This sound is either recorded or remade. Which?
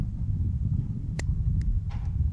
remade